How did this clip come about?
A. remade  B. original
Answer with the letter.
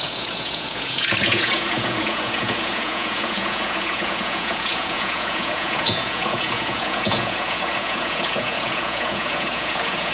A